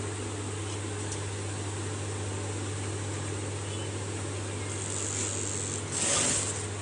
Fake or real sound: real